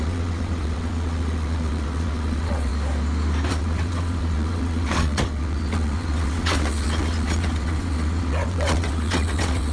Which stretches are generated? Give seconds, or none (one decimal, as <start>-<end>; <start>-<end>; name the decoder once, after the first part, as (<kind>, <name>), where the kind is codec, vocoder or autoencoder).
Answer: 0.0-2.7 (vocoder, WaveNeXt); 3.5-9.7